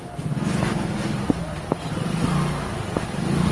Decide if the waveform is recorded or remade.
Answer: recorded